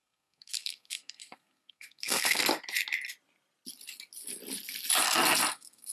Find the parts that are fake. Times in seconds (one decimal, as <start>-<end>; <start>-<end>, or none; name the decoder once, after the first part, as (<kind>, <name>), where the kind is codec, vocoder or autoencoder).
0.0-2.4 (codec, SNAC); 5.5-5.9